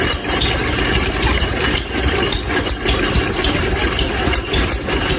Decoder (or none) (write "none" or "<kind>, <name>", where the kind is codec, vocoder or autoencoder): none